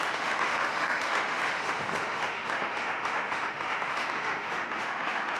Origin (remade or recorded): remade